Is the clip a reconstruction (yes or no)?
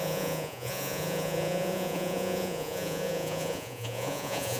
yes